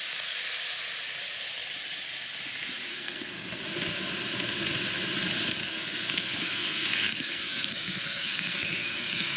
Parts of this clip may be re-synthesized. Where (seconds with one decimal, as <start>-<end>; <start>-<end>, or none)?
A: 2.9-3.6; 5.6-9.4